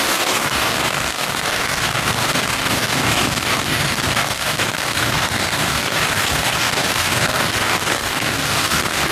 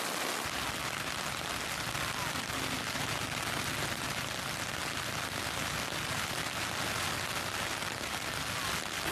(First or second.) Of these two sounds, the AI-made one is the first